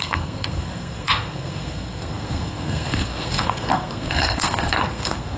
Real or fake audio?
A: fake